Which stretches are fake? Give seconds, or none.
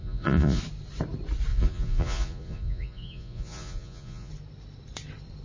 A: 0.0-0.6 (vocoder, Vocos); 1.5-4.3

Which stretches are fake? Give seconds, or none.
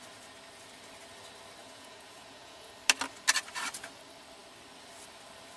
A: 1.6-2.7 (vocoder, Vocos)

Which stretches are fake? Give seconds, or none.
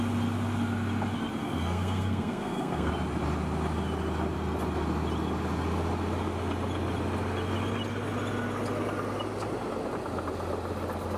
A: 1.4-2.9 (codec, SNAC)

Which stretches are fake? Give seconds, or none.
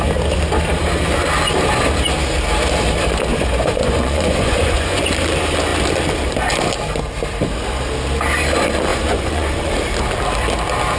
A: 3.3-5.0 (vocoder, Vocos); 8.9-9.7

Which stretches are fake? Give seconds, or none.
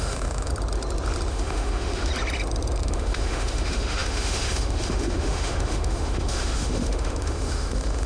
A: 0.0-0.5 (autoencoder, DAC-VAE); 1.3-2.1; 2.8-8.1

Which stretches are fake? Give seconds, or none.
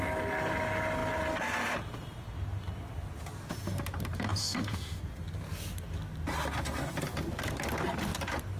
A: 4.4-5.0 (autoencoder, DAC-VAE)